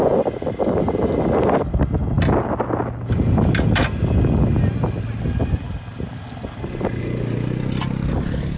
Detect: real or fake real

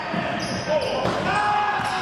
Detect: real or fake real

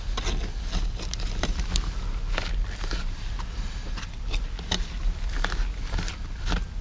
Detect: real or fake real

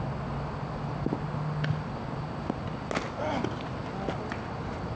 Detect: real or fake real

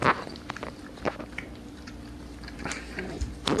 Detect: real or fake fake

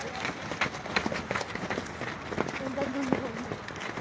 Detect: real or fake real